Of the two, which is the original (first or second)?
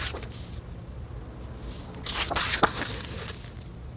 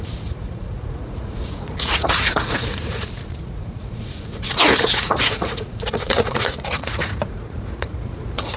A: first